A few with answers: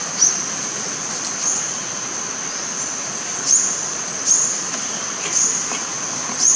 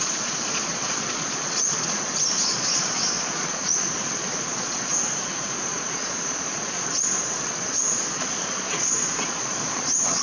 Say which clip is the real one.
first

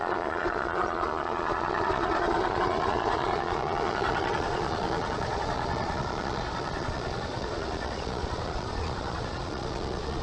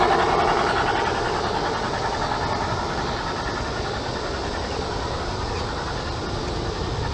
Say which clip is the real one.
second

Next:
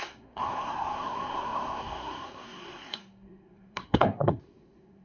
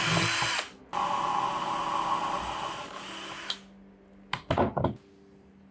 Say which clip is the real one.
second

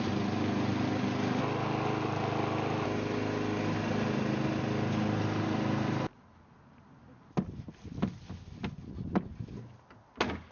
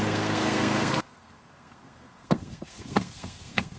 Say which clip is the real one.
first